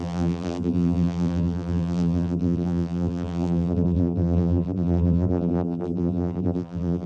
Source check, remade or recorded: remade